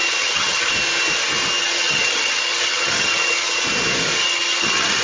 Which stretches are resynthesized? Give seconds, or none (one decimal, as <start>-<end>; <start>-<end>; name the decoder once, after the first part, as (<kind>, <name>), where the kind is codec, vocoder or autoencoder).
0.0-0.7 (vocoder, HiFi-GAN); 1.6-3.6; 4.2-5.0